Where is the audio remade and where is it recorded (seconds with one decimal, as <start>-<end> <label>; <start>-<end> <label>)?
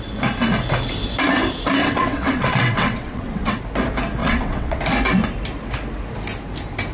0.0-1.8 recorded; 1.8-3.6 remade; 3.6-4.2 recorded; 4.2-4.8 remade; 4.8-6.9 recorded